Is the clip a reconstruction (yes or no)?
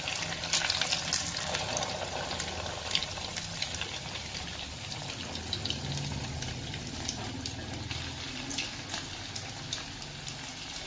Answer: no